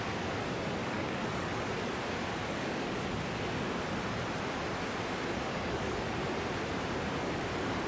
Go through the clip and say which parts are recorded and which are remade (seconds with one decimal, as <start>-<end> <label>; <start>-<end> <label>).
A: 0.0-0.8 recorded; 0.8-1.6 remade; 1.6-2.4 recorded; 2.4-3.0 remade; 3.0-5.5 recorded; 5.5-6.1 remade; 6.1-7.9 recorded